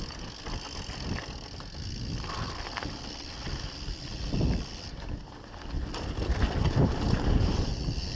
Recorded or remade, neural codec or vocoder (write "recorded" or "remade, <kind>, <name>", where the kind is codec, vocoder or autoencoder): recorded